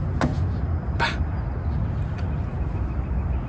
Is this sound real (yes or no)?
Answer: yes